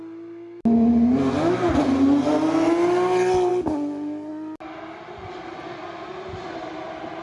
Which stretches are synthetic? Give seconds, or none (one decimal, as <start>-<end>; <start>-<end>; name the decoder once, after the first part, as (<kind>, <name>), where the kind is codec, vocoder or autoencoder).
none

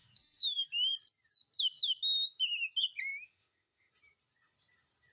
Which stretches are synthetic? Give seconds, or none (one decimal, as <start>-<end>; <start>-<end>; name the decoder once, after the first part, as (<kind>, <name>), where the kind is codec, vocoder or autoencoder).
0.0-0.7 (autoencoder, DAC-VAE); 3.1-3.9

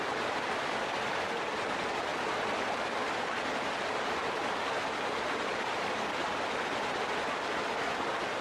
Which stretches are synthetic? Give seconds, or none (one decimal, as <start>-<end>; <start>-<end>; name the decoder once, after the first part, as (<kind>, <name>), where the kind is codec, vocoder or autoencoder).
none

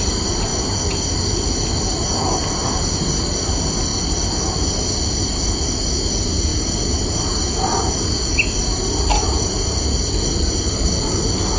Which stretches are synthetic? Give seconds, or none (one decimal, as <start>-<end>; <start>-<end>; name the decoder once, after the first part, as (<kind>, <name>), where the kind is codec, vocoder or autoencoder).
none

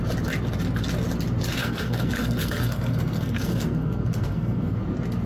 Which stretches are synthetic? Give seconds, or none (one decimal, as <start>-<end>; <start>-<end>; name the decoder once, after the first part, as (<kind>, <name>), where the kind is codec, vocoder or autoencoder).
1.6-4.8 (codec, SNAC)

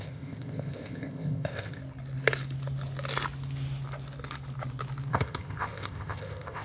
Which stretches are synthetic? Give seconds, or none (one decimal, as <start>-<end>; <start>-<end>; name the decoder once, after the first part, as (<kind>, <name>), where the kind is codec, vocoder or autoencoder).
0.0-1.8 (codec, ZipCodec); 5.1-6.6